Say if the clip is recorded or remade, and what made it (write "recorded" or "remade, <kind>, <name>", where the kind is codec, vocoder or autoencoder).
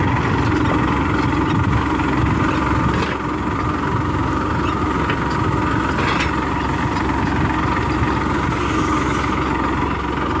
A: recorded